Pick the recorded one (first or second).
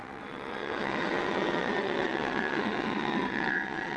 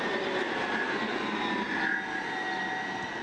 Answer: second